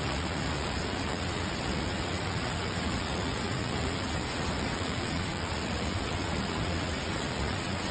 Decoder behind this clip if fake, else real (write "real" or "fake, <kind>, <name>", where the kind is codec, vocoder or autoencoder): fake, vocoder, Vocos